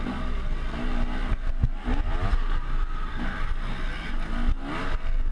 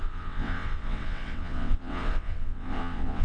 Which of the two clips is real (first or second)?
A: first